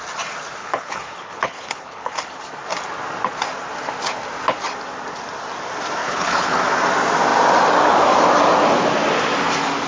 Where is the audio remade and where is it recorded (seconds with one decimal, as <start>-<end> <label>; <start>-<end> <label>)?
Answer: 0.0-0.6 recorded; 0.6-2.3 remade; 2.3-6.0 recorded; 6.0-6.6 remade; 6.6-9.9 recorded